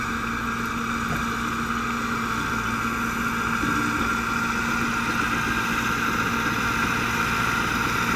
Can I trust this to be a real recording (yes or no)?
yes